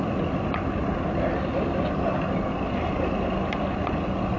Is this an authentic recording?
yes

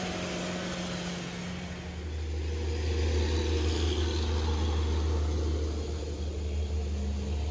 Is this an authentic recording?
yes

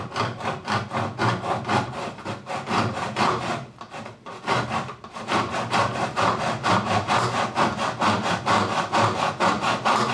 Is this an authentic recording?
yes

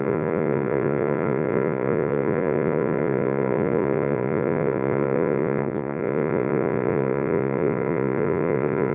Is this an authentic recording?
no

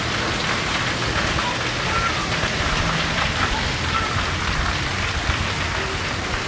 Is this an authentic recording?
yes